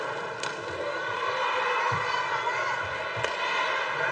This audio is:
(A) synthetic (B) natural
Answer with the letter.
B